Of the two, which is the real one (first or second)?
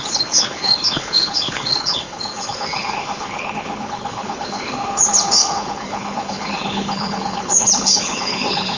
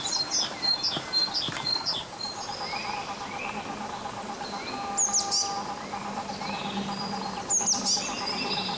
second